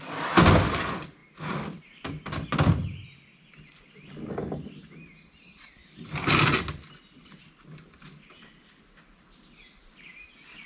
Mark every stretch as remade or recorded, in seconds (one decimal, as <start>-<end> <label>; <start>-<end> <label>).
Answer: 0.0-10.7 recorded